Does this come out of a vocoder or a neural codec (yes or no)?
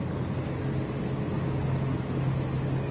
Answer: no